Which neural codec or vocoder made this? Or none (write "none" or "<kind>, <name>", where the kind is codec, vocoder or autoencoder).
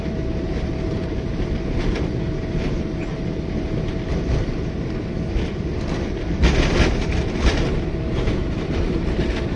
vocoder, BigVGAN v2